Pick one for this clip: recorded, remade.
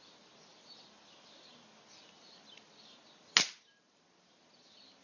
recorded